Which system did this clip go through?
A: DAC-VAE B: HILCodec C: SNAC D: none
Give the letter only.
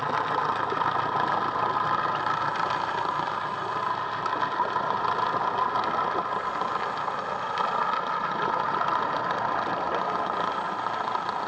D